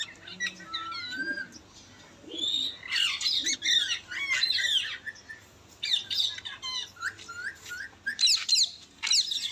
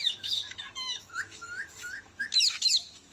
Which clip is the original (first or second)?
first